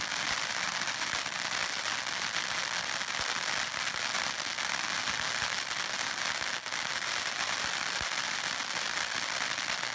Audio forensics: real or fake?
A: real